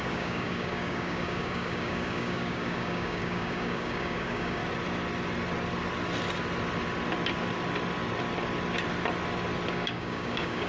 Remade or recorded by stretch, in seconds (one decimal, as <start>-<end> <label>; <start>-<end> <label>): 0.0-4.6 remade; 4.6-9.7 recorded; 9.7-10.7 remade

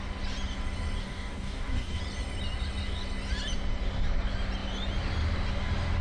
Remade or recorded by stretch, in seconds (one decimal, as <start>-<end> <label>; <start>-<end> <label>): 0.0-1.0 recorded; 1.0-2.0 remade; 2.0-6.0 recorded

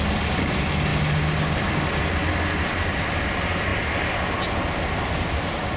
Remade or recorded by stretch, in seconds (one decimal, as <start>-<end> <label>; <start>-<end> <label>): 0.0-5.8 recorded

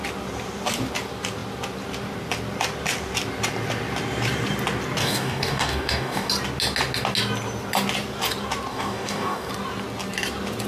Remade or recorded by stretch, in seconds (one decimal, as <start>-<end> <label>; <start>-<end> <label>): 0.0-5.0 recorded; 5.0-6.3 remade; 6.3-8.7 recorded; 8.7-9.5 remade; 9.5-10.7 recorded